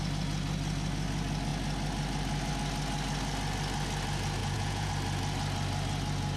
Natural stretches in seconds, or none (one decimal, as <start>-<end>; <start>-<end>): 0.0-4.4; 4.9-6.4